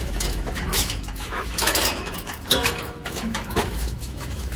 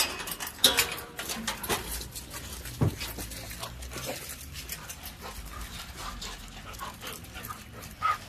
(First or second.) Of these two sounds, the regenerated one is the first